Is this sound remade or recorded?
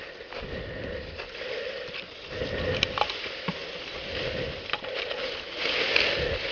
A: recorded